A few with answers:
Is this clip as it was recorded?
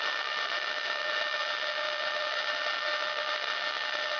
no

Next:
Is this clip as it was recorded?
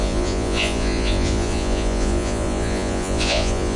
no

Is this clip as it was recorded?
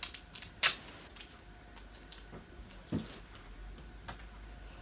yes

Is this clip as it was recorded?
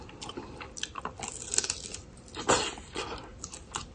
yes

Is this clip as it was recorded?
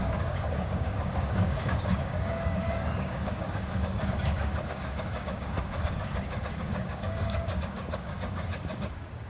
no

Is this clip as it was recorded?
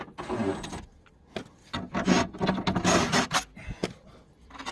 yes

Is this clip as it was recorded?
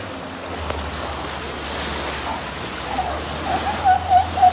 yes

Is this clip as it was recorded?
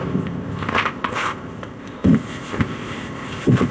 no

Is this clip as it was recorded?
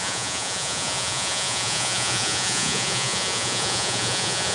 no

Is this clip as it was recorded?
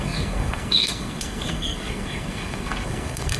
no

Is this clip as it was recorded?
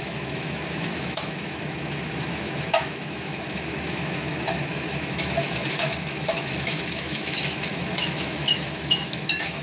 no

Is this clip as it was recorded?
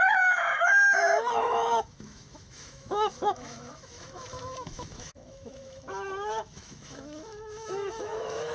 no